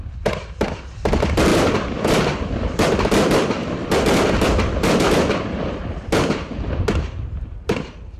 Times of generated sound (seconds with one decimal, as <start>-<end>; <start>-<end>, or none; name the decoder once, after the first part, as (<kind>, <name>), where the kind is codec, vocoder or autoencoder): 1.5-2.2 (vocoder, BigVGAN v2); 3.6-7.5